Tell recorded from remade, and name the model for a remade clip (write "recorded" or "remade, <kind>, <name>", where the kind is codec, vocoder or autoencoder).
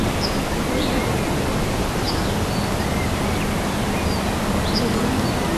recorded